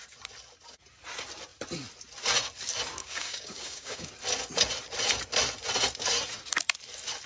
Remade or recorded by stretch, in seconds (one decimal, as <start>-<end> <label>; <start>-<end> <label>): 0.0-3.0 recorded; 3.0-4.1 remade; 4.1-7.3 recorded